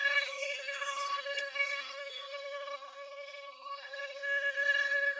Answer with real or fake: fake